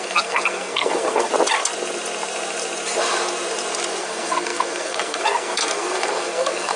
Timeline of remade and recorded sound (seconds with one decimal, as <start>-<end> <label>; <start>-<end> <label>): 0.0-1.3 remade; 1.3-4.0 recorded; 4.0-6.8 remade